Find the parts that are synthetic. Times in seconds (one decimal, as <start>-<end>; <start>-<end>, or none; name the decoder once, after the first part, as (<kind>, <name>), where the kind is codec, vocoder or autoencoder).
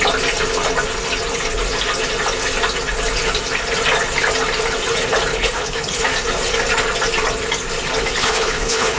5.3-6.0 (codec, HILCodec); 8.2-9.0